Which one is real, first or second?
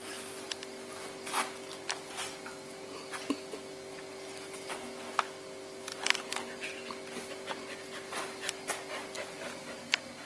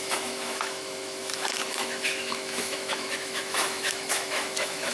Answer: first